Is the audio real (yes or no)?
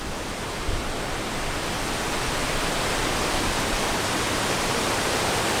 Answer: no